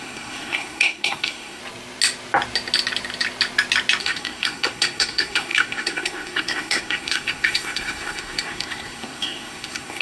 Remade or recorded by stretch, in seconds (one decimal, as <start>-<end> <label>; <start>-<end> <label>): 0.0-1.6 remade; 1.6-4.0 recorded; 4.0-10.0 remade